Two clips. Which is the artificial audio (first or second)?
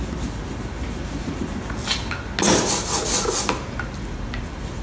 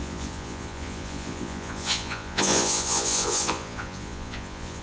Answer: second